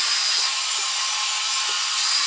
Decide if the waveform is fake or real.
real